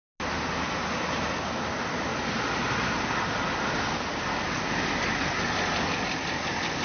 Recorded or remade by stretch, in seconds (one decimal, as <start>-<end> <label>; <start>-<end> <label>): 0.0-6.8 recorded